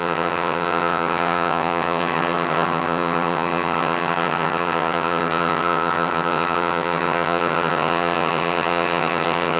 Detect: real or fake fake